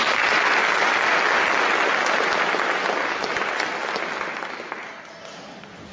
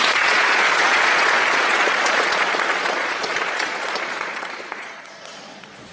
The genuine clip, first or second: first